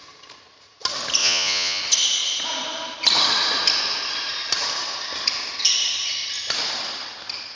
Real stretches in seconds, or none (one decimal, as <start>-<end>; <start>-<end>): 0.0-1.2; 1.8-7.6